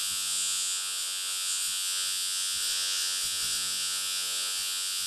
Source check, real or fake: fake